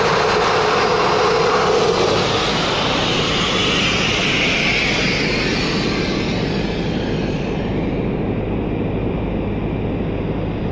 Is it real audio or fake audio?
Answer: real